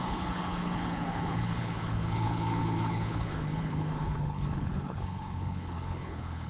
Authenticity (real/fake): fake